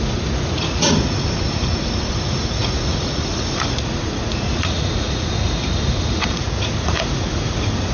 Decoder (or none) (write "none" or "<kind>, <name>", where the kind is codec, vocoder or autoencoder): vocoder, Vocos